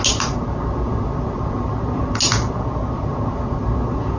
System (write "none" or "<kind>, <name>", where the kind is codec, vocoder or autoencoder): none